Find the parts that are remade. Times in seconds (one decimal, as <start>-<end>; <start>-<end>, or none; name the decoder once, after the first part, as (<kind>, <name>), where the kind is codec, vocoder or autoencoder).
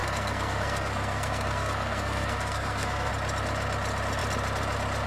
0.0-3.1 (codec, SNAC)